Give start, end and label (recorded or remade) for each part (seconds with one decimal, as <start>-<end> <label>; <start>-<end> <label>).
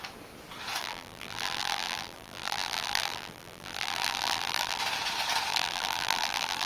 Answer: 0.0-0.8 recorded; 0.8-4.8 remade; 4.8-5.5 recorded; 5.5-6.7 remade